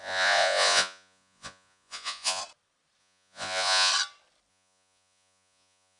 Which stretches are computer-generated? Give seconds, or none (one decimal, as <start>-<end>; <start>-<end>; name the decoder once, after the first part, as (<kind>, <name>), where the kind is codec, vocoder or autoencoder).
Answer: 0.0-2.4 (vocoder, Vocos); 3.0-3.9; 4.5-6.0